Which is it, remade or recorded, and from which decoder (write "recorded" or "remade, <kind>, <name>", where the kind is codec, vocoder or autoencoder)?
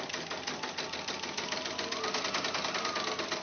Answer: recorded